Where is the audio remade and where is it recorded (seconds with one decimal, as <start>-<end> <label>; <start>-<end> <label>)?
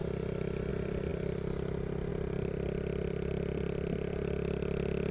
0.0-5.1 recorded